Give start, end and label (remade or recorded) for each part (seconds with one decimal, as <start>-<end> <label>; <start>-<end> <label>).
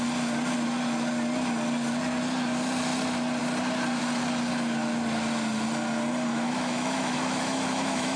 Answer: 0.0-6.3 recorded; 6.3-8.2 remade